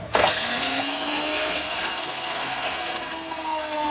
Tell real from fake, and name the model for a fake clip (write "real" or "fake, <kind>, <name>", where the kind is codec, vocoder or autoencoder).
fake, codec, SNAC